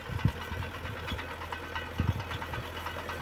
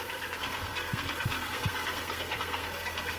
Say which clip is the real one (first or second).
first